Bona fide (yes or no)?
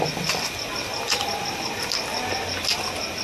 yes